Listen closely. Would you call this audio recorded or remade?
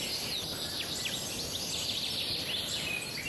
recorded